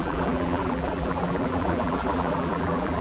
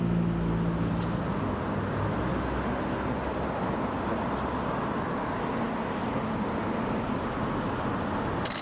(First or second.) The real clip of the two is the second